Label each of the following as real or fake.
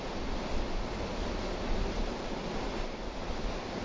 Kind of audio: real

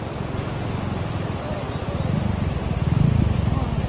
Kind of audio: real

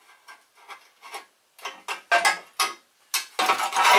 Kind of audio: real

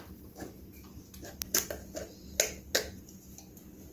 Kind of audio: real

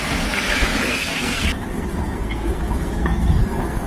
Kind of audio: fake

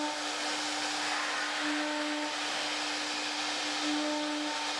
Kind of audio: real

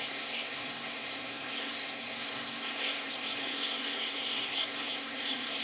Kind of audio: fake